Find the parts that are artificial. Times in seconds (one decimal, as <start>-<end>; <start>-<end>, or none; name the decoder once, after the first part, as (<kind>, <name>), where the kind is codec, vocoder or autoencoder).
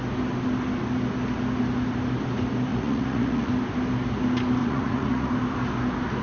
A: 2.7-3.5 (vocoder, Vocos); 4.6-5.3